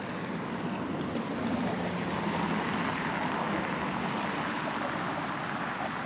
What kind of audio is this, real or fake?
real